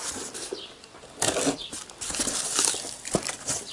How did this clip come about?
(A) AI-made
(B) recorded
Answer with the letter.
B